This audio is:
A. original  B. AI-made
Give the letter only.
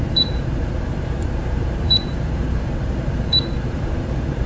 B